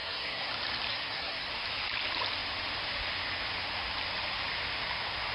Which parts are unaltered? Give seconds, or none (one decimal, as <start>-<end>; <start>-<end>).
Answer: 0.5-0.9; 1.5-5.3